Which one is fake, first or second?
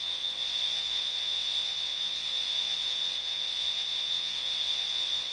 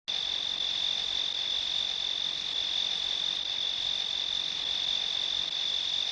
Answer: first